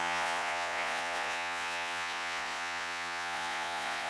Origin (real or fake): fake